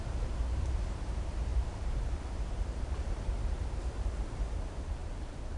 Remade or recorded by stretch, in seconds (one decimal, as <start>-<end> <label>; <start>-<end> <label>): 0.0-5.6 remade